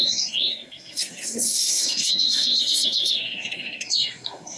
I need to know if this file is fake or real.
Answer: fake